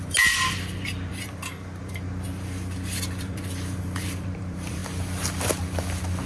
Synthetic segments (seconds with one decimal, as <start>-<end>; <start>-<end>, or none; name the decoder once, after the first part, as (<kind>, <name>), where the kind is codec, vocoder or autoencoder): 0.0-4.8 (vocoder, BigVGAN v2)